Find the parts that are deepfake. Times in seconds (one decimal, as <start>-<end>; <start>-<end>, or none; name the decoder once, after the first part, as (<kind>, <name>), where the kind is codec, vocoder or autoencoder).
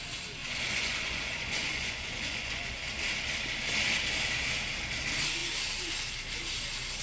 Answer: 0.4-2.9 (vocoder, Vocos)